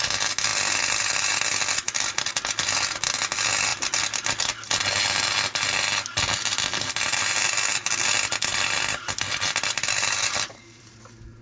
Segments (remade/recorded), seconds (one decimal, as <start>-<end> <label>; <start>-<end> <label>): 0.0-0.5 recorded; 0.5-2.3 remade; 2.3-3.7 recorded; 3.7-4.5 remade; 4.5-6.7 recorded; 6.7-7.3 remade; 7.3-8.5 recorded; 8.5-10.9 remade; 10.9-11.4 recorded